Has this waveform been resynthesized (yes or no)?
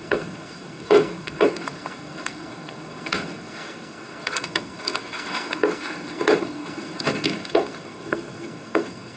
yes